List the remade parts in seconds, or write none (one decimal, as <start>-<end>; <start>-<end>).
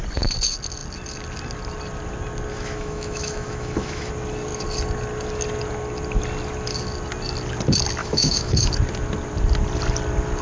2.5-4.1; 8.0-8.7